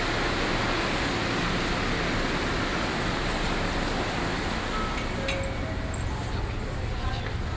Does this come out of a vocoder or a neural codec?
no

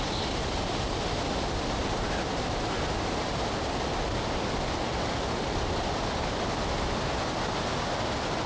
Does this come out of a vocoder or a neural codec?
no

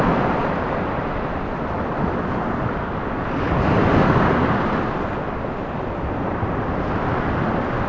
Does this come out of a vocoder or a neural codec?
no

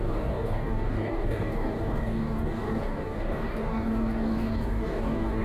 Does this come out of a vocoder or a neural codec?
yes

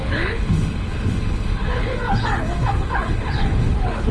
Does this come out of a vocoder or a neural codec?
yes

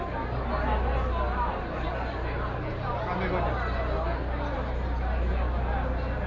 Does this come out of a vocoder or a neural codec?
no